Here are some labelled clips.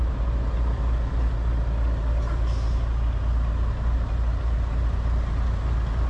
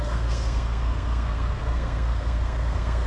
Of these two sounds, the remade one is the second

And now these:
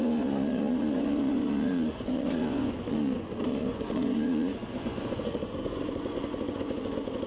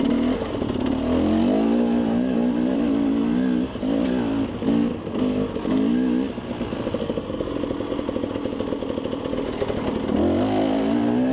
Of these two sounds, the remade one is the first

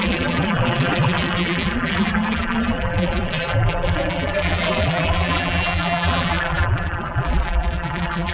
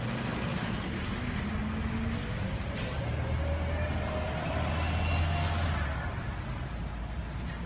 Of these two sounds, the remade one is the first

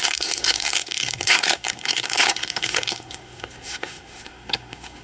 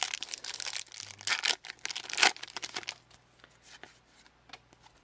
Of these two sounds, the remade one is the first